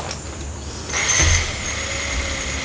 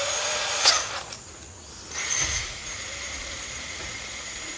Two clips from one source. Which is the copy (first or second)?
second